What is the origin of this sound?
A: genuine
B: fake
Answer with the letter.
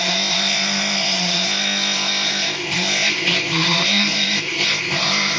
B